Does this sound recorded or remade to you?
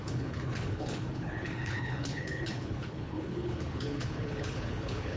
remade